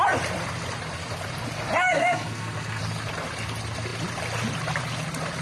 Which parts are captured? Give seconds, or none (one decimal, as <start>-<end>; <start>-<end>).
0.0-1.9; 2.8-5.4